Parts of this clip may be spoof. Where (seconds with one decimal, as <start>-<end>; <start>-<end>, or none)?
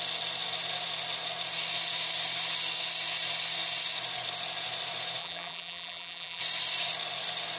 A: 5.2-6.4